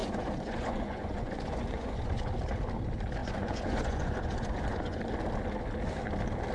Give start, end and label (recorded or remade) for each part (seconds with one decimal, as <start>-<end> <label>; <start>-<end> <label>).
0.0-2.3 remade; 2.3-3.2 recorded; 3.2-5.0 remade; 5.0-6.5 recorded